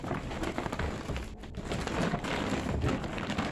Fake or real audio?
real